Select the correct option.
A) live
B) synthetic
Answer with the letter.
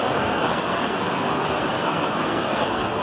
B